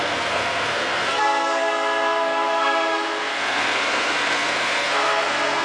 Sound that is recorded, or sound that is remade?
remade